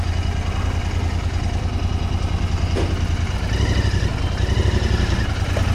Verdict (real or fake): real